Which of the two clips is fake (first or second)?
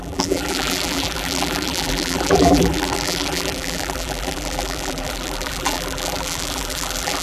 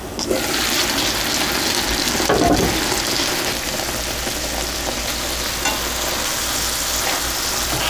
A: first